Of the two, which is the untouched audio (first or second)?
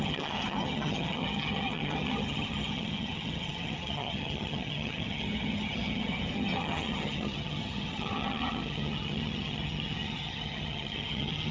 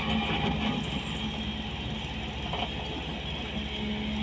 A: second